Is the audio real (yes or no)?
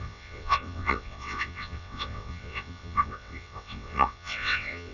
no